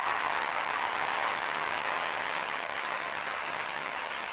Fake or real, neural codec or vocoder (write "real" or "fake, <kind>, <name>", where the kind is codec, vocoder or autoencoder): fake, vocoder, HiFi-GAN